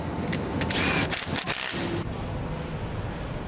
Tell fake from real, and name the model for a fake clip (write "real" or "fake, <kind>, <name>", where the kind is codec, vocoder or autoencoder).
real